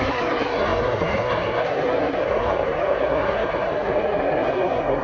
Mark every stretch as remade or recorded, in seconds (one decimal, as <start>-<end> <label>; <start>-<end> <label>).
0.0-5.0 remade